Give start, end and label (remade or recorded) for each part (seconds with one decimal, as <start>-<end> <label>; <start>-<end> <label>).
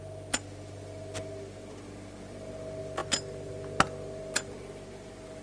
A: 0.0-5.4 recorded